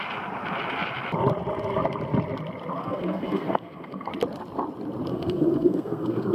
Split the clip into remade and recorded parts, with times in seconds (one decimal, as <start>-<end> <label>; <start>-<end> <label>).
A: 0.0-2.8 recorded; 2.8-4.1 remade; 4.1-5.1 recorded; 5.1-6.3 remade